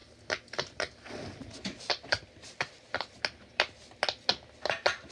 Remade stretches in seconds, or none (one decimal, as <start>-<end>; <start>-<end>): none